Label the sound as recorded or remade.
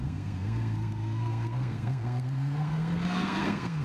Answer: remade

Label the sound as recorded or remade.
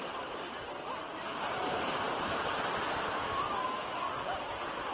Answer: recorded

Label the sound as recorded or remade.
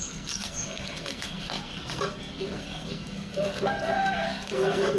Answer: remade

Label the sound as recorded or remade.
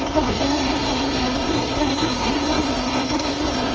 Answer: remade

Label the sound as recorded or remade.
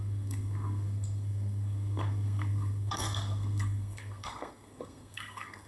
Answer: remade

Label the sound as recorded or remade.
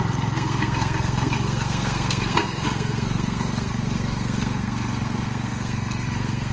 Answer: remade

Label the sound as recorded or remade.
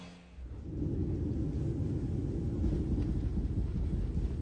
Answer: recorded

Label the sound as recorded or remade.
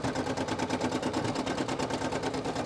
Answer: recorded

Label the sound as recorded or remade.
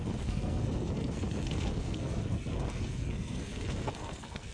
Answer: remade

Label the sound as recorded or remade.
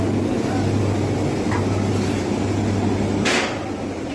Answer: recorded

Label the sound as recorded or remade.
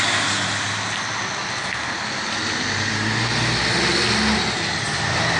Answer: recorded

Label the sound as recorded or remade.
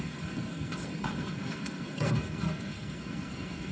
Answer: remade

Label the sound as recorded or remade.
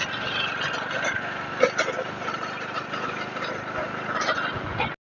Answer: recorded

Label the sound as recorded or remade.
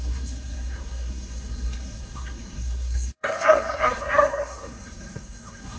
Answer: remade